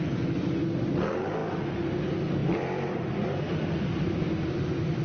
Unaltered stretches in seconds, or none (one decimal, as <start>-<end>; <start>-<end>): 0.0-5.0